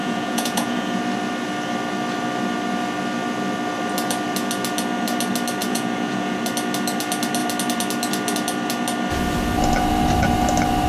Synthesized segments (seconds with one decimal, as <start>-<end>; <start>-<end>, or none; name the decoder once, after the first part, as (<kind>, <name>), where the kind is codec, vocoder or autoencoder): 0.0-1.0 (vocoder, Vocos); 5.6-6.4